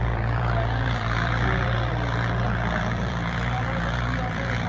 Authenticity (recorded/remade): remade